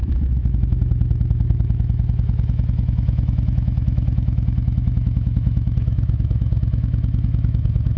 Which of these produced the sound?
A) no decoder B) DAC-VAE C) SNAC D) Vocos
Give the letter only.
B